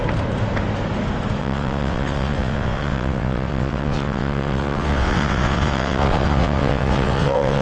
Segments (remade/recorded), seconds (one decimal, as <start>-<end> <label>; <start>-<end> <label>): 0.0-1.4 recorded; 1.4-7.6 remade